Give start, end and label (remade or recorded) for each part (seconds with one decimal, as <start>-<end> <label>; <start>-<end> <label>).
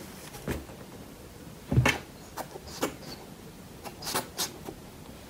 0.0-0.9 recorded; 0.9-1.7 remade; 1.7-5.3 recorded